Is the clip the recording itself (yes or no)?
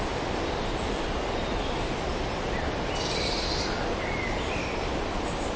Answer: yes